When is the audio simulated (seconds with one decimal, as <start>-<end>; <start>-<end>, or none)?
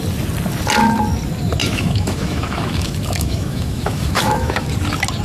1.6-4.7